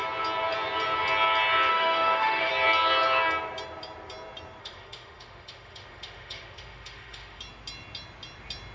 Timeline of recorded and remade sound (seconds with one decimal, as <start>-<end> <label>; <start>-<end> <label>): 0.0-1.7 recorded; 1.7-2.5 remade; 2.5-4.6 recorded; 4.6-7.4 remade; 7.4-8.7 recorded